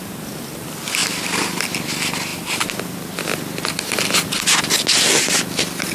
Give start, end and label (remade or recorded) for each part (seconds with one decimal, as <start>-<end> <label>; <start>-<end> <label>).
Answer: 0.0-1.0 recorded; 1.0-1.6 remade; 1.6-5.9 recorded